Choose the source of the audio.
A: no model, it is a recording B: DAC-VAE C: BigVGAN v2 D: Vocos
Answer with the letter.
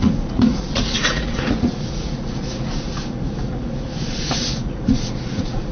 D